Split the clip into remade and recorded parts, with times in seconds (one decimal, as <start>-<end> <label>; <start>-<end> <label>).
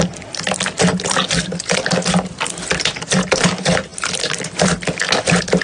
0.0-5.6 recorded